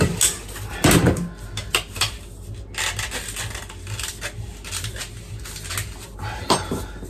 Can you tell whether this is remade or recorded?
recorded